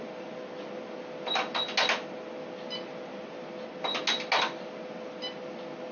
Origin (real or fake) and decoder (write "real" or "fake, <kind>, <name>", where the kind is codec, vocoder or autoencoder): real